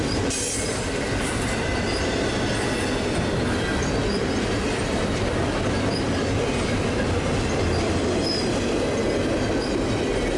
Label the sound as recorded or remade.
recorded